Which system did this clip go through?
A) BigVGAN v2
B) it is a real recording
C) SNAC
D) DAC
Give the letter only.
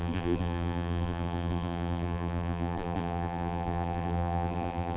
A